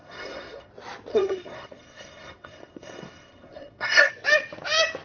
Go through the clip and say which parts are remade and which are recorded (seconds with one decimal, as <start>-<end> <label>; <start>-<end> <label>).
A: 0.0-0.7 remade; 0.7-1.1 recorded; 1.1-4.1 remade; 4.1-5.0 recorded